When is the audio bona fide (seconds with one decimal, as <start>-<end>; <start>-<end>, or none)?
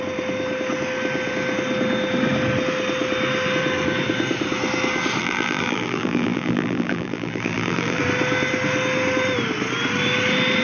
0.0-5.2; 8.0-10.6